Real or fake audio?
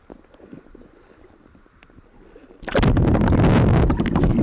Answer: real